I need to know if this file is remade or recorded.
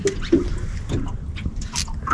recorded